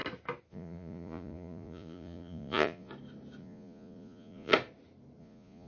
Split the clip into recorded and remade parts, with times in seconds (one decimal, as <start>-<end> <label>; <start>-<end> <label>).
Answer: 0.0-0.5 recorded; 0.5-2.9 remade; 2.9-3.4 recorded; 3.4-4.5 remade; 4.5-5.2 recorded; 5.2-5.7 remade

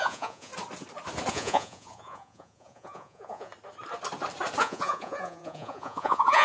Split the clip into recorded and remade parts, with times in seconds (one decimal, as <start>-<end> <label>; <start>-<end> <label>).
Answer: 0.0-0.5 remade; 0.5-1.3 recorded; 1.3-3.5 remade; 3.5-4.6 recorded; 4.6-6.4 remade

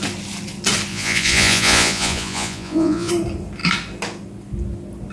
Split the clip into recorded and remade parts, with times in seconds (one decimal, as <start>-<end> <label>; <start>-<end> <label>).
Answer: 0.0-0.9 recorded; 0.9-3.1 remade; 3.1-5.1 recorded

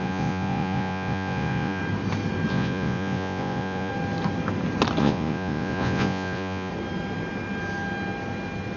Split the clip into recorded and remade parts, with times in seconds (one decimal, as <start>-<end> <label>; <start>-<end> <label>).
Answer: 0.0-1.8 remade; 1.8-2.5 recorded; 2.5-3.9 remade; 3.9-5.0 recorded; 5.0-6.7 remade; 6.7-8.8 recorded